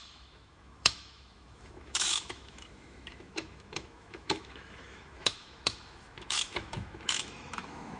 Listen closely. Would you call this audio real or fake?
fake